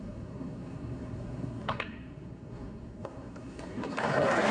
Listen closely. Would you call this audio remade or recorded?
remade